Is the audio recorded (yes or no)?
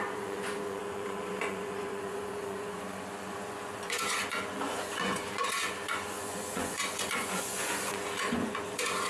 no